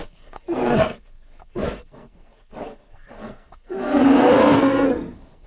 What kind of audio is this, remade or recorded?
remade